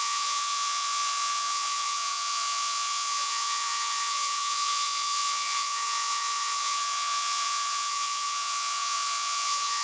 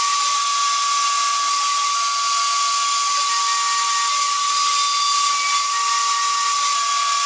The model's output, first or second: first